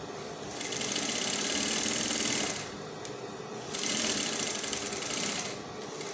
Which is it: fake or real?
real